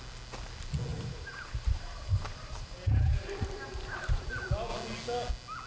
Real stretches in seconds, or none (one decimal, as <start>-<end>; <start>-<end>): 0.0-0.9; 4.3-5.7